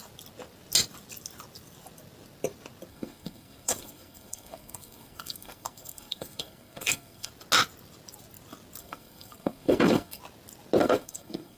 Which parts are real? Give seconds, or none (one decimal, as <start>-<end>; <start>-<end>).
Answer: 0.0-2.9; 7.3-8.8; 10.2-10.8